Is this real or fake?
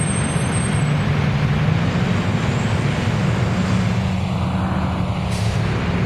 real